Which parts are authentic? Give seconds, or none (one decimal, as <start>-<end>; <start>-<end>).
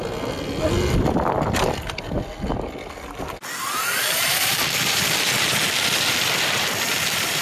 0.0-3.7